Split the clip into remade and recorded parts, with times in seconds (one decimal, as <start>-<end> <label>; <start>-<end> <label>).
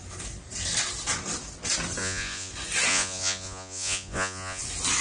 0.0-2.0 recorded; 2.0-2.5 remade; 2.5-2.9 recorded; 2.9-4.6 remade; 4.6-5.0 recorded